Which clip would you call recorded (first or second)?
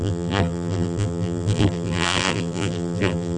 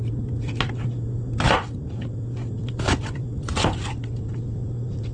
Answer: second